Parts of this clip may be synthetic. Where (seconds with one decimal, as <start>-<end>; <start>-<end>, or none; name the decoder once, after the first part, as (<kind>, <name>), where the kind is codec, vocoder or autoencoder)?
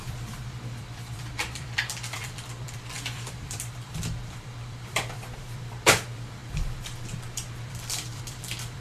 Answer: 0.0-8.8 (vocoder, BigVGAN v2)